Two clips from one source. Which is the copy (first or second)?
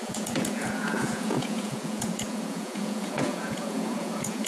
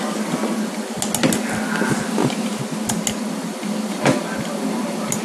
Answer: first